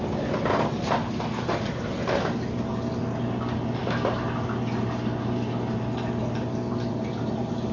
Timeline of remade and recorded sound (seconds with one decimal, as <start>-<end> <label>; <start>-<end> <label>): 0.0-7.7 recorded